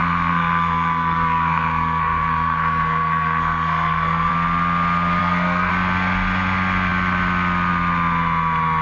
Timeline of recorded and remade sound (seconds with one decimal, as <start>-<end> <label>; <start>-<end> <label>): 0.0-4.3 remade; 4.3-5.2 recorded; 5.2-5.7 remade; 5.7-8.8 recorded